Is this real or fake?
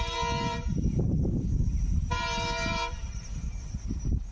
fake